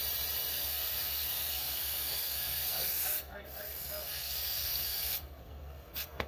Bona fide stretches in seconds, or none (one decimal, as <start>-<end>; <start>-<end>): 0.0-0.5